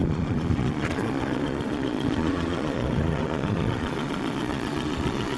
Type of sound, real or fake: fake